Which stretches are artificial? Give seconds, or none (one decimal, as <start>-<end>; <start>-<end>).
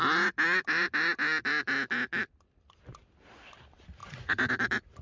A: 4.0-4.5